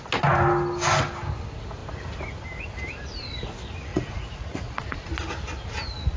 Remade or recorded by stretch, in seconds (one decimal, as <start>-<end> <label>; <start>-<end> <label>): 0.0-3.9 recorded; 3.9-5.0 remade; 5.0-6.2 recorded